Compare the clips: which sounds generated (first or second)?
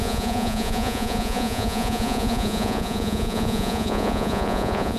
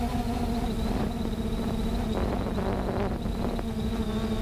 first